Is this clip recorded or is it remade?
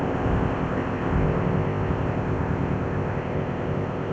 remade